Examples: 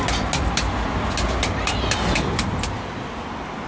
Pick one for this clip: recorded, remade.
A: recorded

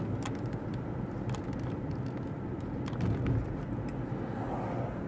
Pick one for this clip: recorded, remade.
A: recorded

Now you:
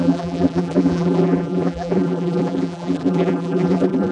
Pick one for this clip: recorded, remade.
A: remade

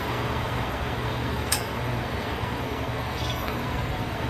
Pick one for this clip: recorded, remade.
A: remade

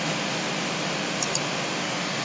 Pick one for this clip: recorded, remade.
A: recorded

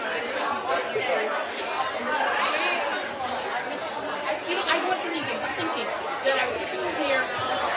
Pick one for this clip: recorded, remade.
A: recorded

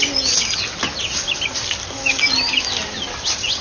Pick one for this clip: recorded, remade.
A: recorded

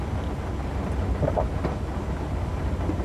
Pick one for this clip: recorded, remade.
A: recorded